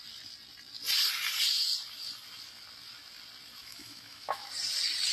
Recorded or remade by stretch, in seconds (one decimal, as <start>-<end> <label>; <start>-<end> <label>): 0.0-3.6 recorded; 3.6-4.5 remade; 4.5-5.1 recorded